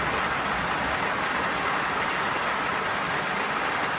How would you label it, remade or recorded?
recorded